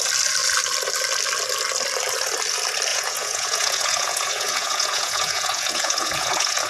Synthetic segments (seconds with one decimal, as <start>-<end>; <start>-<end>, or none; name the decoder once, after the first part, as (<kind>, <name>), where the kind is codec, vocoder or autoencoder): 2.9-6.7 (vocoder, Vocos)